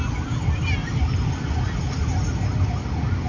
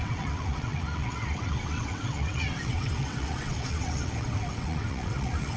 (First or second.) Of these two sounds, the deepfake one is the second